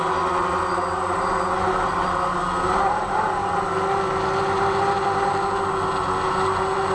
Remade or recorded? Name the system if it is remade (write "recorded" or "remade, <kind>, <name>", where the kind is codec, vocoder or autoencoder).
recorded